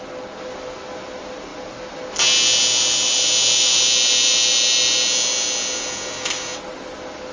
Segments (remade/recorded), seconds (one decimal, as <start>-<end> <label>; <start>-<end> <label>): 0.0-7.3 recorded